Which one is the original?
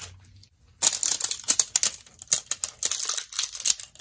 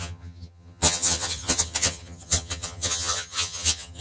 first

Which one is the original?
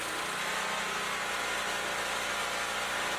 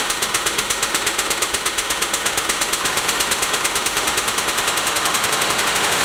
first